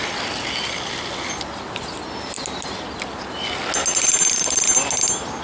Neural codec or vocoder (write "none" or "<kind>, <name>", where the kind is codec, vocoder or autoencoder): none